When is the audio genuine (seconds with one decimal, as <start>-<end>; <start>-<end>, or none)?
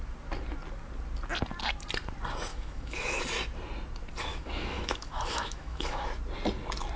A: 0.0-2.5; 3.2-4.3; 6.1-7.0